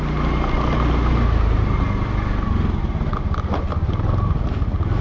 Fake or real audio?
real